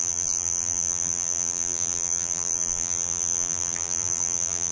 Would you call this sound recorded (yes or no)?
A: no